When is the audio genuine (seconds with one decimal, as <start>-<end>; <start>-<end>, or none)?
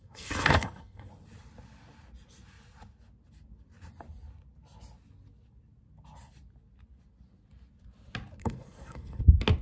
1.1-8.4; 9.2-9.6